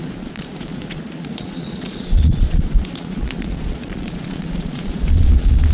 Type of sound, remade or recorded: remade